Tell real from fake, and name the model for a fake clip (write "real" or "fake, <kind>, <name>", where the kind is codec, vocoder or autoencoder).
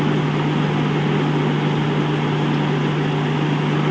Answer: real